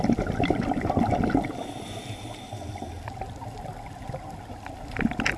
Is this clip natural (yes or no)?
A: yes